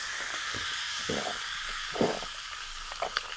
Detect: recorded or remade remade